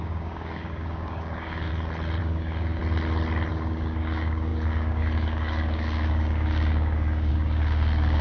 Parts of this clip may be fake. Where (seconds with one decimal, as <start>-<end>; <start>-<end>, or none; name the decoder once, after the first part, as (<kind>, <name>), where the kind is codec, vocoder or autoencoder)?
0.0-1.7 (codec, DAC); 2.2-2.8; 3.5-8.2